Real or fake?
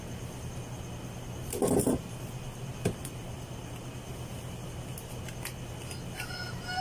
real